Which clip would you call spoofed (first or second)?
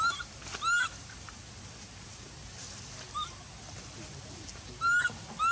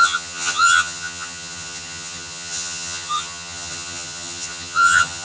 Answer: second